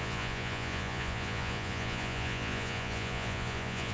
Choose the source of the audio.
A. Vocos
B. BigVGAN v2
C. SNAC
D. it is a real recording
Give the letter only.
A